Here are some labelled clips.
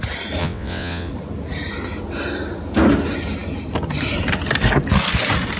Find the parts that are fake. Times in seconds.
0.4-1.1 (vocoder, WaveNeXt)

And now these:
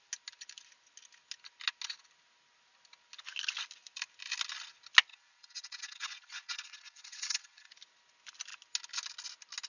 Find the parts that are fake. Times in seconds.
5.1-7.7 (vocoder, WaveNeXt)

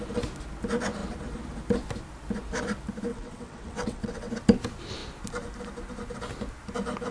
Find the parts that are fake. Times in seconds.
3.1-4.3 (vocoder, WaveNeXt)

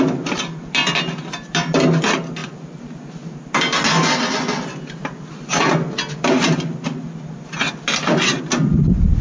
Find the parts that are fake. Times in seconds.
none

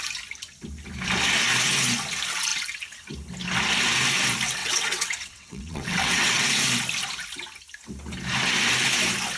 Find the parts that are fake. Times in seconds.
4.6-6.4 (vocoder, WaveNeXt)

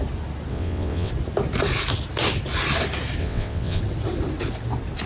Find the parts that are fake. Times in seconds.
0.5-1.1 (vocoder, WaveNeXt); 3.2-3.8